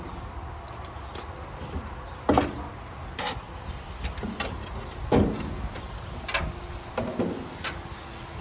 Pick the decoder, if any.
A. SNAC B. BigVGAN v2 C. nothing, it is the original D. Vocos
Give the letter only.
C